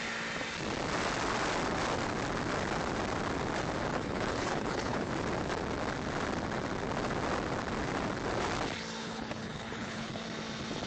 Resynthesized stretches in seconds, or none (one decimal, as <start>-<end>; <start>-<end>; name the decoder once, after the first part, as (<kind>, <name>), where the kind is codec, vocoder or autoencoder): 3.9-5.1 (codec, HILCodec); 9.0-10.1